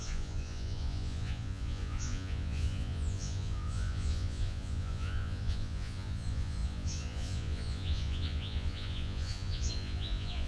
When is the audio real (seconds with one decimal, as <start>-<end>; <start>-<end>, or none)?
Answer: none

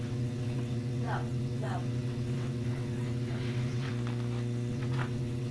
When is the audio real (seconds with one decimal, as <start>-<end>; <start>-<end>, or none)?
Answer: 3.9-4.7

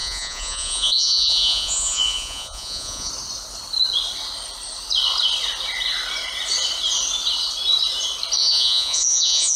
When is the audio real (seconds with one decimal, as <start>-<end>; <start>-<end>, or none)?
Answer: 3.1-8.4

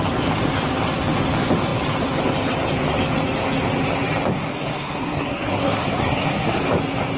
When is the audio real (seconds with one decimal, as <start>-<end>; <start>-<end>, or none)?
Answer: 0.0-4.3; 6.6-7.2

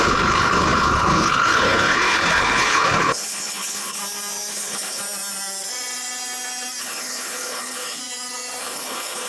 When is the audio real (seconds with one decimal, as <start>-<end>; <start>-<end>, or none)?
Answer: 4.0-4.5; 5.0-6.8; 8.0-8.6

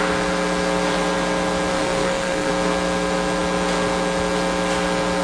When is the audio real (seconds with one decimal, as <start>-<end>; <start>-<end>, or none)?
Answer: 0.0-1.7; 2.5-5.2

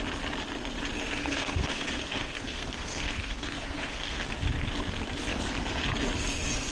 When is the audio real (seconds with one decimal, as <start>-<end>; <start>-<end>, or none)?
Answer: 0.0-1.2; 4.4-5.3; 5.8-6.7